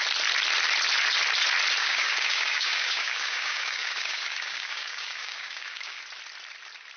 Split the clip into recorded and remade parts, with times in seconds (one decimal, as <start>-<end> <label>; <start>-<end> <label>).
0.0-1.8 recorded; 1.8-6.0 remade; 6.0-7.0 recorded